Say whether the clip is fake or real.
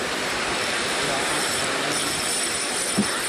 fake